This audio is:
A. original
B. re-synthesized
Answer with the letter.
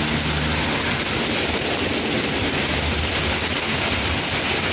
A